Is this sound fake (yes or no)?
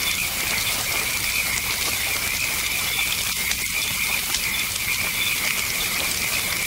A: no